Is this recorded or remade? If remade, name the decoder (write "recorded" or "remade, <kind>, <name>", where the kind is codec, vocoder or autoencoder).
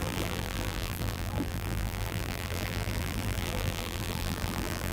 remade, vocoder, BigVGAN v2